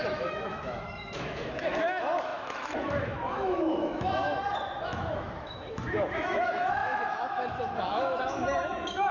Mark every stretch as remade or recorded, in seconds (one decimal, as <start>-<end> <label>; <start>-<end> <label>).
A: 0.0-9.1 remade